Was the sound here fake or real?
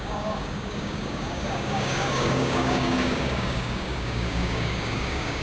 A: fake